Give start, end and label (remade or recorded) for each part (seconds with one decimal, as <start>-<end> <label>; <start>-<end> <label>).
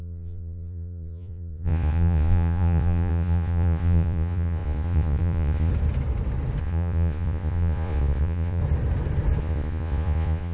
0.0-5.7 remade; 5.7-6.6 recorded; 6.6-8.6 remade; 8.6-9.4 recorded; 9.4-10.5 remade